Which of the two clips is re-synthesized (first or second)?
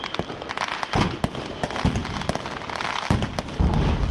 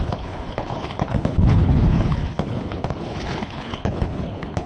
second